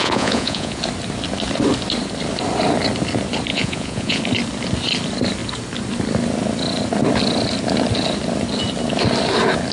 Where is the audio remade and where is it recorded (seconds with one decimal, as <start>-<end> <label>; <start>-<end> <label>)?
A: 0.0-0.8 remade; 0.8-3.5 recorded; 3.5-4.2 remade; 4.2-9.7 recorded